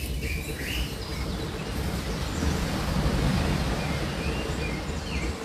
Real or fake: real